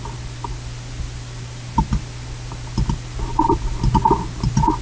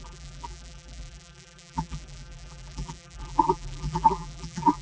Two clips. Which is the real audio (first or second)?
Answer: first